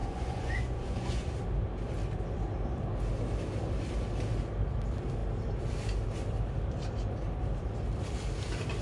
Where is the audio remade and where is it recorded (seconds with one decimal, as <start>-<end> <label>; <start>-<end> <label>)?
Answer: 0.0-1.3 remade; 1.3-8.8 recorded